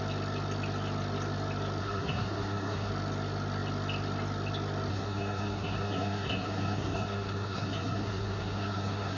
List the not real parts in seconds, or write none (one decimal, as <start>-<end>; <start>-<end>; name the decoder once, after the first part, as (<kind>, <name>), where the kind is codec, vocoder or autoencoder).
1.8-2.9 (codec, SNAC); 4.9-9.2